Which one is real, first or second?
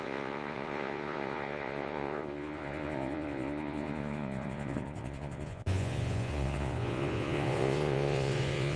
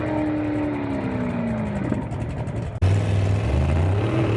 second